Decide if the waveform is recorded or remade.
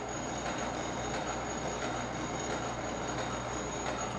recorded